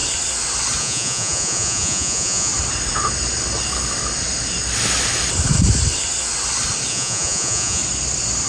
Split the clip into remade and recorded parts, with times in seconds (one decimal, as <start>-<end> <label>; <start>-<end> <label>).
0.0-0.8 recorded; 0.8-2.5 remade; 2.5-6.9 recorded; 6.9-7.8 remade; 7.8-8.5 recorded